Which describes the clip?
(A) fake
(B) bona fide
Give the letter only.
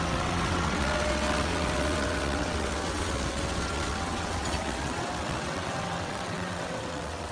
A